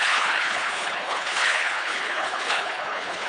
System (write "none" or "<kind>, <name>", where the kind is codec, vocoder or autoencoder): codec, HILCodec